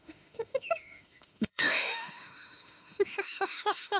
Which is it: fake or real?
fake